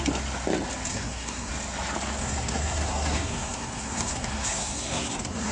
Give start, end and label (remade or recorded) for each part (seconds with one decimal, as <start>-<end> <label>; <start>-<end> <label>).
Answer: 0.0-0.9 recorded; 0.9-1.5 remade; 1.5-2.2 recorded; 2.2-5.5 remade